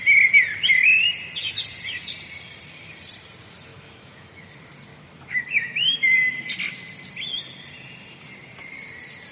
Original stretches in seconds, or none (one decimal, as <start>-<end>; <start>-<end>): 0.0-3.7; 4.5-4.9; 6.3-9.3